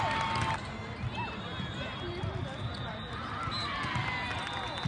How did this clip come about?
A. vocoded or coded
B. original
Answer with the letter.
B